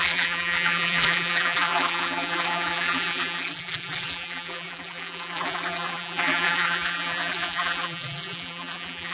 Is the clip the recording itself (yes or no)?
no